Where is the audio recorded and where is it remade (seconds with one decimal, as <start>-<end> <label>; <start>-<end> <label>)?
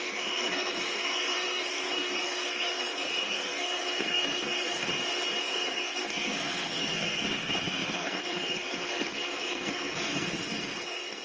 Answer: 0.0-4.9 remade; 4.9-5.4 recorded; 5.4-11.2 remade